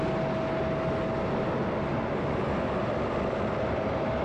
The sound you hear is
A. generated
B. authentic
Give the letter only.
B